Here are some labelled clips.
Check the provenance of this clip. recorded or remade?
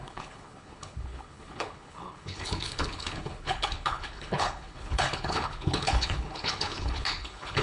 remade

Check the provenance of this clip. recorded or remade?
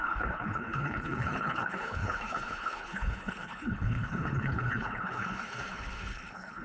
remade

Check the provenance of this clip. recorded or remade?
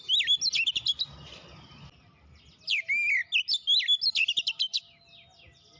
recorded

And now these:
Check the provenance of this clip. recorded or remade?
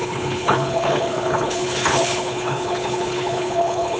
remade